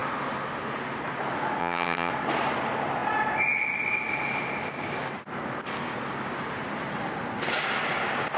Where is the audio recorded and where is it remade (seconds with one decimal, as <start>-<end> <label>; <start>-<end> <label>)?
0.0-1.6 recorded; 1.6-2.1 remade; 2.1-8.4 recorded